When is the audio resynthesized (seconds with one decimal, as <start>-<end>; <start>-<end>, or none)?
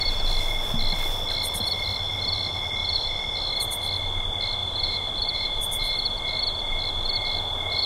2.8-3.3; 4.6-6.3